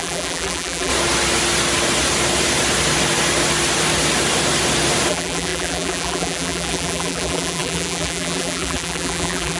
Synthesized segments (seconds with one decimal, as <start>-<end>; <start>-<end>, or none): 0.0-0.9; 5.1-9.6